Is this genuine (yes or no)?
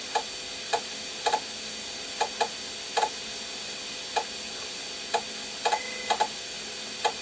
yes